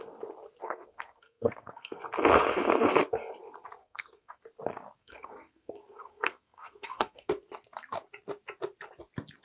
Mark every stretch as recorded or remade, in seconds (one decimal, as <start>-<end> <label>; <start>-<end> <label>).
0.0-0.6 recorded; 0.6-2.0 remade; 2.0-3.8 recorded; 3.8-4.4 remade; 4.4-5.0 recorded; 5.0-7.3 remade; 7.3-9.4 recorded

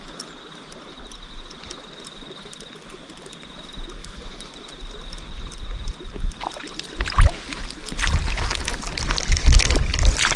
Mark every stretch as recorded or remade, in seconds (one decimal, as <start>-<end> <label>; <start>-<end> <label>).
0.0-4.0 recorded; 4.0-4.5 remade; 4.5-10.4 recorded

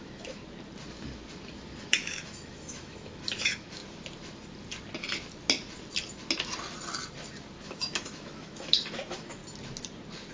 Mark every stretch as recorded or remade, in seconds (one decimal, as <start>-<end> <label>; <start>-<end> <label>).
0.0-0.4 remade; 0.4-1.8 recorded; 1.8-3.8 remade; 3.8-7.6 recorded; 7.6-9.4 remade; 9.4-10.3 recorded

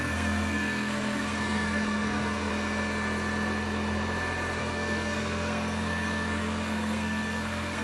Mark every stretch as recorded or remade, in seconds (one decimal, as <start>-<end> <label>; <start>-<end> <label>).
0.0-2.5 remade; 2.5-4.6 recorded; 4.6-7.8 remade

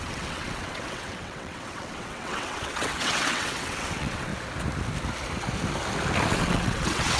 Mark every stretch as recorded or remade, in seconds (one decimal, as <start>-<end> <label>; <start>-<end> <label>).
0.0-4.3 remade; 4.3-6.3 recorded; 6.3-7.2 remade